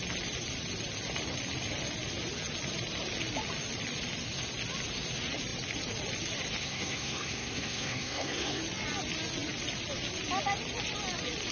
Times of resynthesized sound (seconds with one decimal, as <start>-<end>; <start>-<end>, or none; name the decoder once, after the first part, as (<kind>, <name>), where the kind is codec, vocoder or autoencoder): 6.6-8.6 (codec, SNAC)